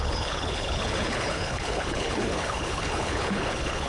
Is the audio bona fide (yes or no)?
no